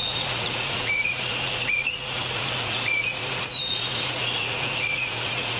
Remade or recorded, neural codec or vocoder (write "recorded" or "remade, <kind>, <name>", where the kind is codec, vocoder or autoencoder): remade, vocoder, Vocos